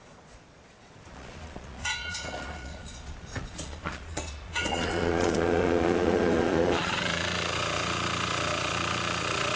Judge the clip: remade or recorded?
remade